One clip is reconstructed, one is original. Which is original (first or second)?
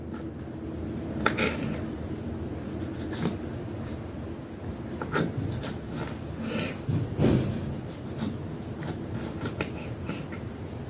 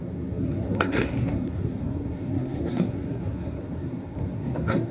first